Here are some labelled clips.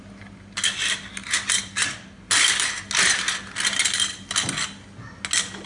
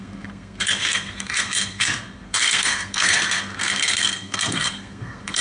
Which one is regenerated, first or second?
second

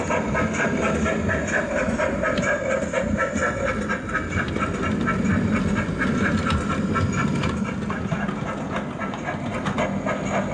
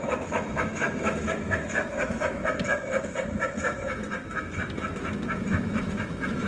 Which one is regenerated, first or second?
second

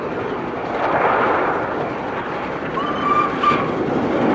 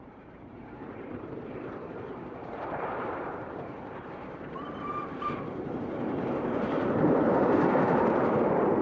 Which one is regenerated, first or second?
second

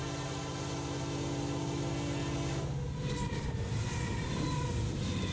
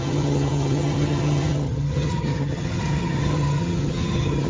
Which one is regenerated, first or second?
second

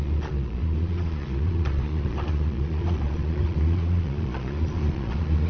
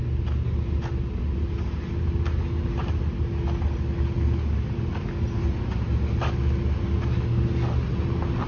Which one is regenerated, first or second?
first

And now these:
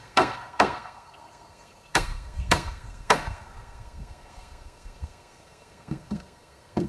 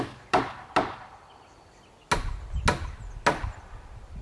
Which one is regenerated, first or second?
first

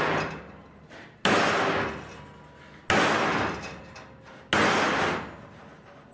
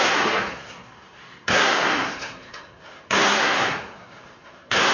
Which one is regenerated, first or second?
second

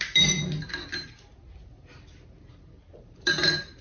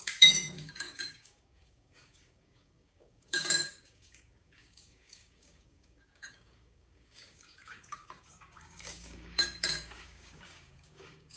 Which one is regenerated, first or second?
second